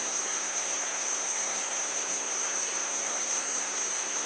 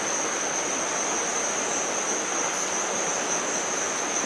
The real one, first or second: second